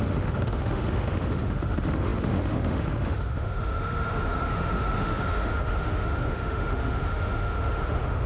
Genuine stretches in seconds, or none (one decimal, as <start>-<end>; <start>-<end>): none